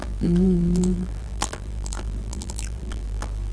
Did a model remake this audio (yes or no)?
yes